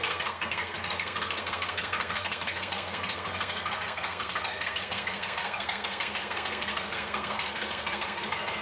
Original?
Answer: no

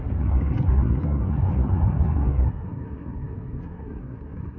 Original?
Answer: no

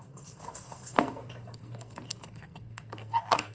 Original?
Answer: no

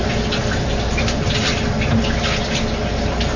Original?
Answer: yes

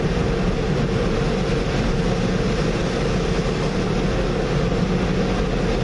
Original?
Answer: yes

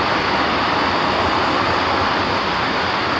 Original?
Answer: yes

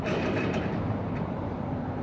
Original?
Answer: yes